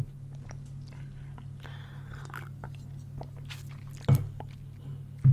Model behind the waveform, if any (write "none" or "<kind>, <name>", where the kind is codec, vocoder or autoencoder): none